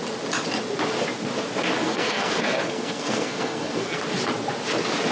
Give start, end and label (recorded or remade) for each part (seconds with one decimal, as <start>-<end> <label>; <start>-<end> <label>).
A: 0.0-1.8 recorded; 1.8-4.0 remade; 4.0-5.1 recorded